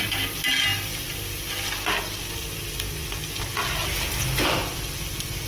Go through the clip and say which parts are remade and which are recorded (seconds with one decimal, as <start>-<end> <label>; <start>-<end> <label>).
0.0-5.5 recorded